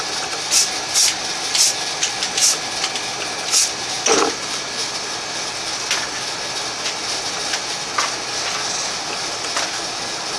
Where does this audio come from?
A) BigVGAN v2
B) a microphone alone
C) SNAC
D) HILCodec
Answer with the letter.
B